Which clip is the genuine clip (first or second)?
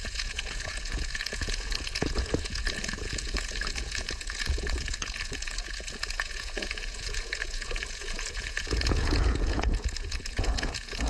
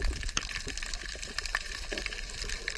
second